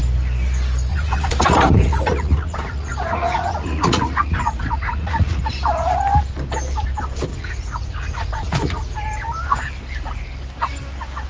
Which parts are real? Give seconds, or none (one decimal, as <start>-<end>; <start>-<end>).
0.0-0.9; 5.4-7.3; 8.8-11.3